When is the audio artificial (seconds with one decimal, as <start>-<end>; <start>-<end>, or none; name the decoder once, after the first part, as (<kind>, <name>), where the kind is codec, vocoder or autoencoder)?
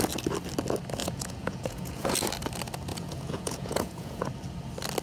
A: 1.0-2.1 (vocoder, Vocos); 2.9-4.3